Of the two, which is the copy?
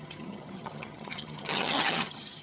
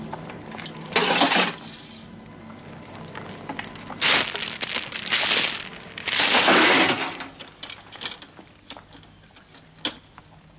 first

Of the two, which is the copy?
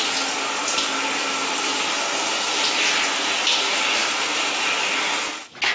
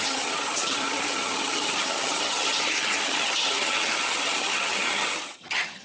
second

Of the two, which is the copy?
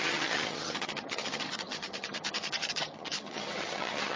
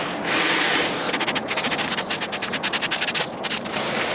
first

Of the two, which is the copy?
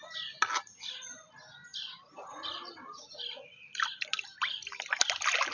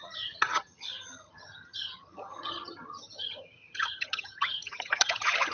second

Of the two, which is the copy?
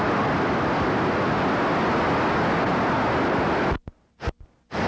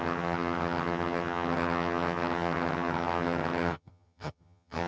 second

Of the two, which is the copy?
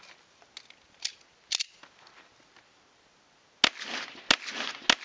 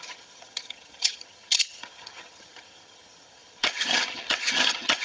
second